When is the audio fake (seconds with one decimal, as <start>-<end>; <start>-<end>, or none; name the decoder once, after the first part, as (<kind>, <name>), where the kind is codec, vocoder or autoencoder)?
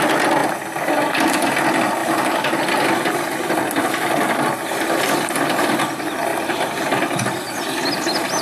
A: none